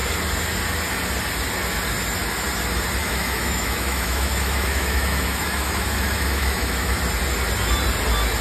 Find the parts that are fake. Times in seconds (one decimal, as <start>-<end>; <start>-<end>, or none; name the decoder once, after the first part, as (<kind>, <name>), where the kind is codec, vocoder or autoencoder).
3.0-7.0 (autoencoder, DAC-VAE)